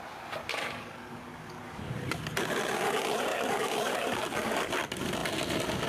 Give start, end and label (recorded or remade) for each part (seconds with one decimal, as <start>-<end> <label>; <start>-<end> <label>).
0.0-0.5 recorded; 0.5-1.9 remade; 1.9-3.3 recorded; 3.3-4.7 remade; 4.7-5.9 recorded